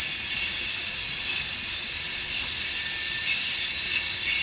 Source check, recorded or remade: recorded